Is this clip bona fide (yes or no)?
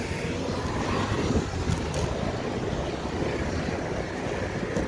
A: yes